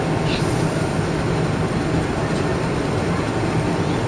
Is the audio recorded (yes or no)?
yes